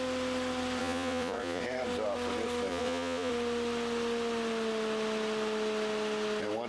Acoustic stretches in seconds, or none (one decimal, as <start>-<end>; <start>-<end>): 0.0-0.8; 1.6-2.7; 3.3-6.7